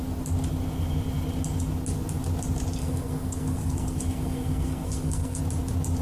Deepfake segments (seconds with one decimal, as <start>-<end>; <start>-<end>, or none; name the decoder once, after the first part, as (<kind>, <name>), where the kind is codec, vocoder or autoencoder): 2.8-5.4 (codec, SNAC)